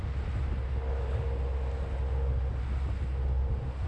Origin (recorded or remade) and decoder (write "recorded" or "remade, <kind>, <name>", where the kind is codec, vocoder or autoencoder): recorded